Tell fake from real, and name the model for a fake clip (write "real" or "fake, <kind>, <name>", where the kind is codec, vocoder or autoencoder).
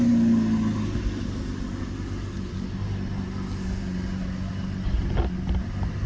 real